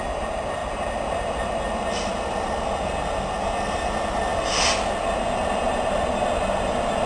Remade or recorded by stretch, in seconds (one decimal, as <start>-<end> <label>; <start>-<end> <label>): 0.0-7.1 recorded